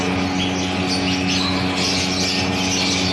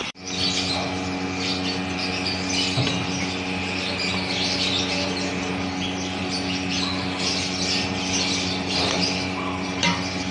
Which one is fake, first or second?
second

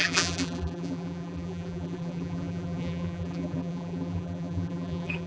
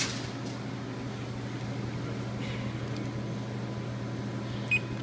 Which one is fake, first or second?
first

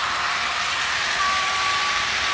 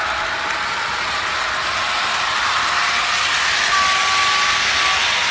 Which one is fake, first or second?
first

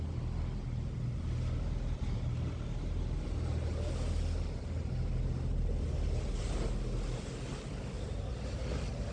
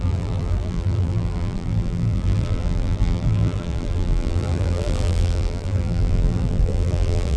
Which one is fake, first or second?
second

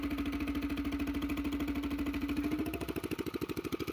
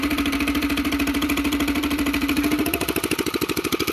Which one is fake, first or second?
second